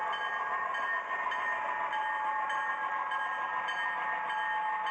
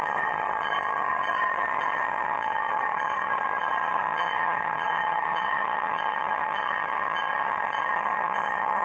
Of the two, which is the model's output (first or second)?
second